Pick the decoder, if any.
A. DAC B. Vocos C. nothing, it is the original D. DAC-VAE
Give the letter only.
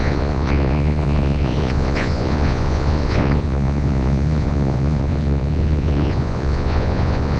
B